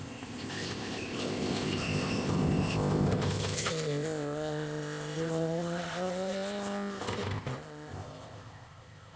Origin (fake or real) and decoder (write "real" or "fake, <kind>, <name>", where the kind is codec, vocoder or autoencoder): fake, codec, ZipCodec